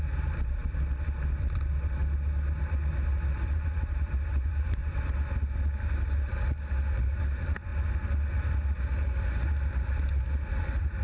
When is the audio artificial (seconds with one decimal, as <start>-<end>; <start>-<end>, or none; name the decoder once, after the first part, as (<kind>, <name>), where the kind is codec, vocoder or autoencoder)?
0.0-0.6 (vocoder, BigVGAN v2); 4.3-4.8; 7.2-7.7; 9.7-10.1; 10.6-11.0